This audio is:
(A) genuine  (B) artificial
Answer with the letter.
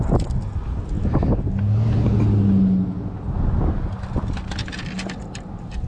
A